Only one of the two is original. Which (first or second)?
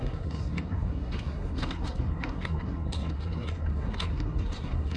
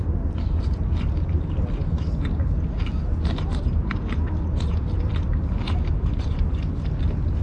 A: second